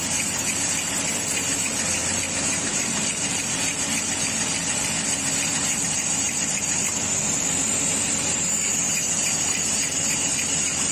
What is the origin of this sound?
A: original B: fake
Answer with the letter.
B